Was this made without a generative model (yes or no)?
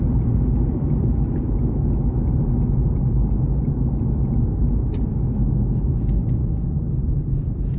yes